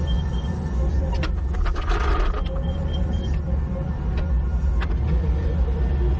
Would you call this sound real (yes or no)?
yes